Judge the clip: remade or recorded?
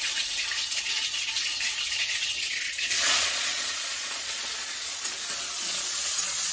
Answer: remade